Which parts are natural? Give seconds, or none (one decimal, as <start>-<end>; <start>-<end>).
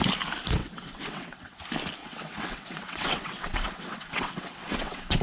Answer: 0.0-0.6; 1.6-2.0